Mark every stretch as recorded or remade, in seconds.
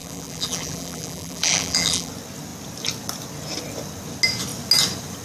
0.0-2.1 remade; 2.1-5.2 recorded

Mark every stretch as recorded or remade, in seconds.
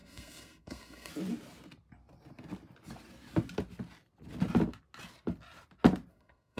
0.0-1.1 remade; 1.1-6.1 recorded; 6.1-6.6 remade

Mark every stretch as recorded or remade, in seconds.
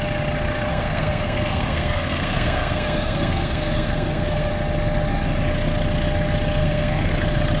0.0-0.7 recorded; 0.7-4.5 remade; 4.5-6.6 recorded; 6.6-7.1 remade; 7.1-7.6 recorded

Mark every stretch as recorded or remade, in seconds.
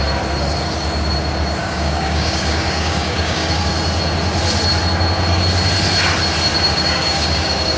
0.0-1.6 recorded; 1.6-3.7 remade; 3.7-6.5 recorded; 6.5-7.8 remade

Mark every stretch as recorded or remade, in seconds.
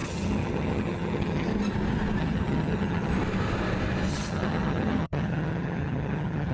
0.0-1.5 remade; 1.5-2.2 recorded; 2.2-3.1 remade; 3.1-4.1 recorded; 4.1-6.5 remade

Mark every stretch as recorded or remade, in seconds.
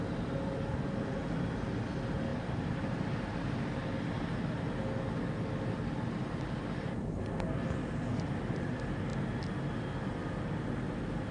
0.0-11.3 recorded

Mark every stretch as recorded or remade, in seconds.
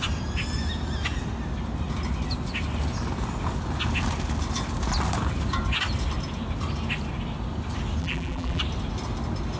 0.0-8.0 recorded; 8.0-8.6 remade; 8.6-9.6 recorded